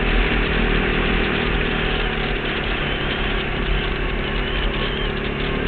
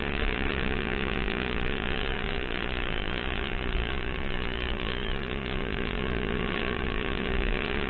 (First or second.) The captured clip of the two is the first